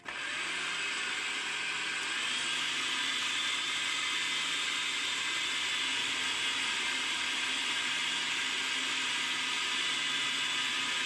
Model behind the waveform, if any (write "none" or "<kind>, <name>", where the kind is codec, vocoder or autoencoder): none